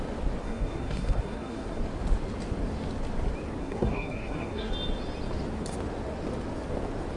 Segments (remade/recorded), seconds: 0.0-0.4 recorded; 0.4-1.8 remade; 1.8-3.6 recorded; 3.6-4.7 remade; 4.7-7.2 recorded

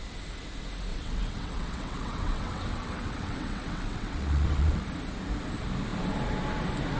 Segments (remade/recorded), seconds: 0.0-0.9 recorded; 0.9-4.8 remade; 4.8-7.0 recorded

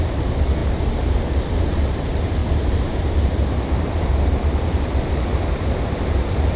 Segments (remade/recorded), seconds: 0.0-6.6 remade